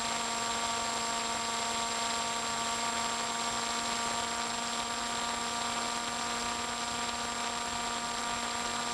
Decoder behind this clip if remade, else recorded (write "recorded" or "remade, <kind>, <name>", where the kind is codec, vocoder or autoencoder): recorded